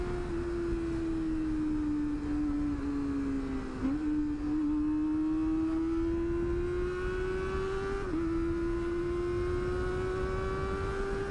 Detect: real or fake real